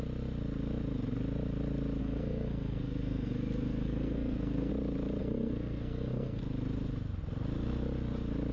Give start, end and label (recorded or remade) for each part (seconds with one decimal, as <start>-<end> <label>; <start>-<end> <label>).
0.0-2.0 recorded; 2.0-4.7 remade; 4.7-5.2 recorded; 5.2-6.4 remade; 6.4-8.5 recorded